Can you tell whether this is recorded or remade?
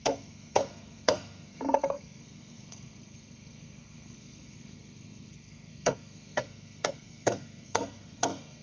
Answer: remade